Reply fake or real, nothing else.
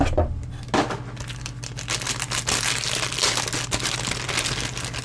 real